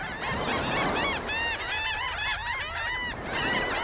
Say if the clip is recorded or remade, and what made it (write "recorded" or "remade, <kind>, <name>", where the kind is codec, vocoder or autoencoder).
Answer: recorded